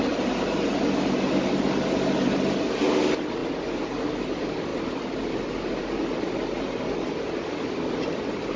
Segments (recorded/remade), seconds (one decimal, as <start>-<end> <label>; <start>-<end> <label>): 0.0-8.6 recorded